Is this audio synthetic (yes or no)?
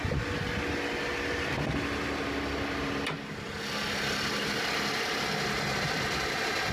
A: no